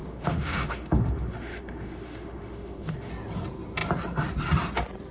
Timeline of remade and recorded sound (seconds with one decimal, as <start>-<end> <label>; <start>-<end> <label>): 0.0-3.1 remade; 3.1-5.1 recorded

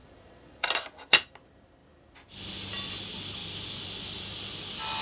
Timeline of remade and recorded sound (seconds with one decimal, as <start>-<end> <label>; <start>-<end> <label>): 0.0-0.7 remade; 0.7-5.0 recorded

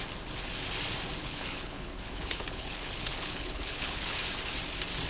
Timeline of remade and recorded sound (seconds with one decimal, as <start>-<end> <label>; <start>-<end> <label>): 0.0-1.2 recorded; 1.2-4.3 remade; 4.3-5.1 recorded